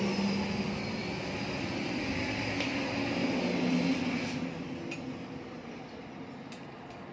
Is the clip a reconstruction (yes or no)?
no